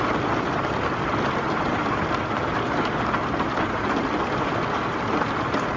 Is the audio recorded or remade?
recorded